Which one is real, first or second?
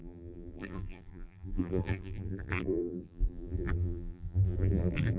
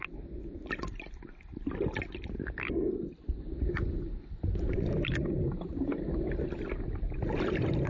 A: second